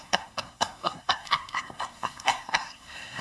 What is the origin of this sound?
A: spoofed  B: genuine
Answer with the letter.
A